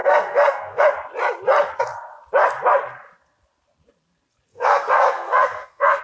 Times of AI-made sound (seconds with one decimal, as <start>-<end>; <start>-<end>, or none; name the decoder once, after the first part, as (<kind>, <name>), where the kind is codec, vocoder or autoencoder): 0.0-0.8 (codec, SNAC); 4.5-6.0

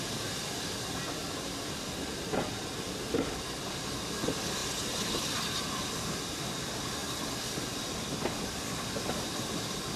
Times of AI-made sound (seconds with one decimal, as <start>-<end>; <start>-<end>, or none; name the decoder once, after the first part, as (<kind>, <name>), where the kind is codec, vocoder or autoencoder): none

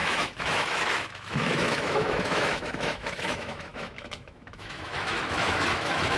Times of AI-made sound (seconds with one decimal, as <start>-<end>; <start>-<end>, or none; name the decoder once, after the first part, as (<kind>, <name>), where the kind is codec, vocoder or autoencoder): 0.0-6.2 (autoencoder, DAC-VAE)

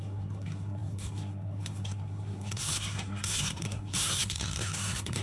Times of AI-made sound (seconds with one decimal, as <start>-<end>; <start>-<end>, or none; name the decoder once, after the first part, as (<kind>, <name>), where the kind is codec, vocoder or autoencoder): 0.0-5.2 (codec, SNAC)

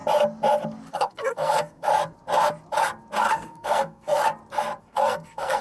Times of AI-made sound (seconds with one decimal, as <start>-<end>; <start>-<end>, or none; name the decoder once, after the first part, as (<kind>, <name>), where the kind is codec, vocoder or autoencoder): 0.9-1.9 (codec, SNAC); 3.2-4.2; 4.8-5.6

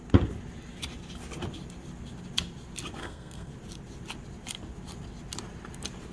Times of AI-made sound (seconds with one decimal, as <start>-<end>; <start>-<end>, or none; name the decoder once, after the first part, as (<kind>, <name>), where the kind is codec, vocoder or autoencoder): 3.0-3.5 (codec, SNAC)

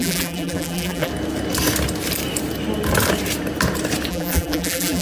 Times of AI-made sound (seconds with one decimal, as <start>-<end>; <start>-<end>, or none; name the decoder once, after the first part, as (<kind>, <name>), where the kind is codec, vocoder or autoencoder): 0.0-1.1 (vocoder, BigVGAN v2); 4.1-5.0

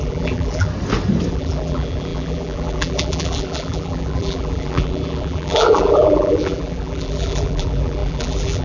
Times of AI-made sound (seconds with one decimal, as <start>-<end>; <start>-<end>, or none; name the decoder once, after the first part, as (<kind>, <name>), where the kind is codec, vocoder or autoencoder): 0.0-0.7 (vocoder, BigVGAN v2); 1.3-8.6